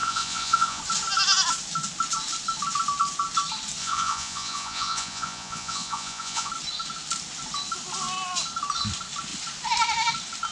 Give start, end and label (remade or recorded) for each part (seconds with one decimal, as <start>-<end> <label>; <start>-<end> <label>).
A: 0.0-0.8 remade; 0.8-3.8 recorded; 3.8-6.5 remade; 6.5-10.5 recorded

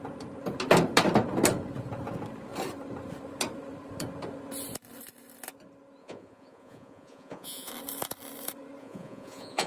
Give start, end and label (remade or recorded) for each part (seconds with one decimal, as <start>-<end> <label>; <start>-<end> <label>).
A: 0.0-6.0 recorded; 6.0-7.7 remade; 7.7-8.8 recorded; 8.8-9.7 remade